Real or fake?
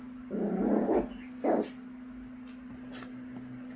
real